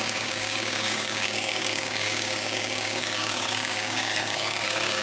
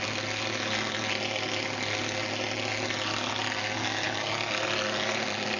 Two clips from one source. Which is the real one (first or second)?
second